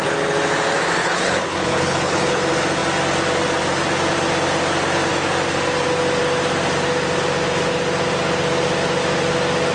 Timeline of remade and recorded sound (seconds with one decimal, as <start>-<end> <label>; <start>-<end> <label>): 0.0-1.0 recorded; 1.0-2.4 remade; 2.4-9.7 recorded